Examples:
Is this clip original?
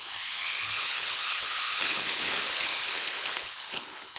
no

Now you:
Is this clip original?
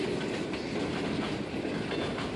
yes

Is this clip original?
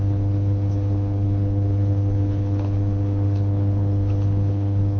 no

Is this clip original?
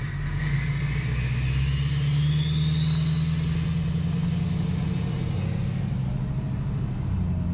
yes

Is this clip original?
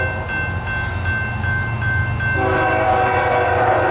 yes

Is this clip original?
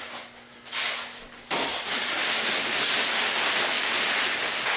yes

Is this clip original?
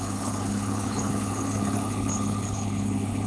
no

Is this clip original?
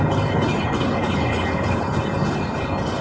no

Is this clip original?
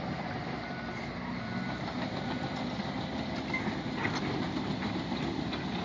yes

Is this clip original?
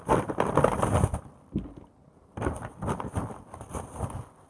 yes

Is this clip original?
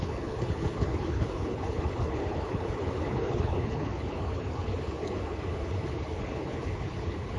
no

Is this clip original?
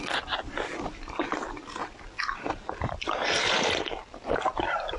yes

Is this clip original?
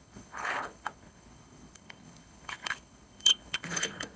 no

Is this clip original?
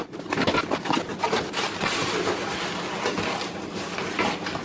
yes